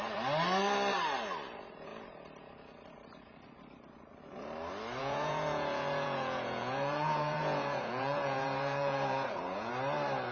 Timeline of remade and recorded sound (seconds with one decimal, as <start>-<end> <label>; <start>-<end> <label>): 0.0-5.0 recorded; 5.0-9.7 remade; 9.7-10.3 recorded